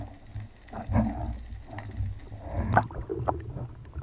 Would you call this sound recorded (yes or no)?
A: yes